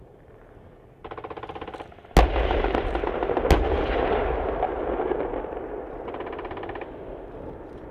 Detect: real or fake real